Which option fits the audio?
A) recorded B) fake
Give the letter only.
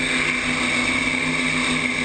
A